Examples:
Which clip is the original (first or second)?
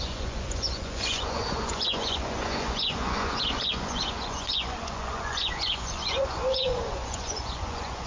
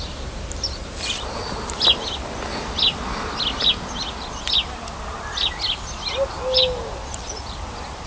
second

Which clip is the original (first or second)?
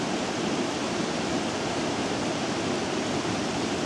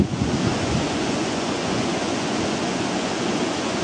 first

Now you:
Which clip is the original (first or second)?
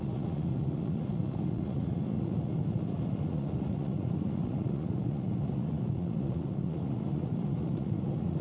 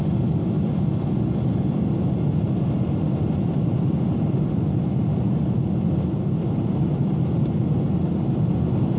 second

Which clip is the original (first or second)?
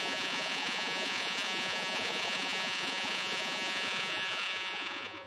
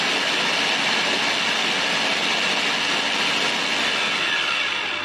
second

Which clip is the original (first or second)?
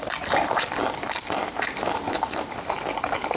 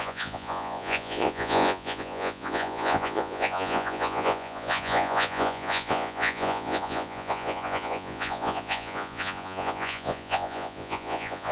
first